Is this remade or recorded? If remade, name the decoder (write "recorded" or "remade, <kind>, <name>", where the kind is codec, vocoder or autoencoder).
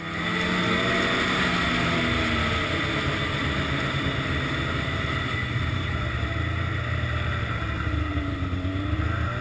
recorded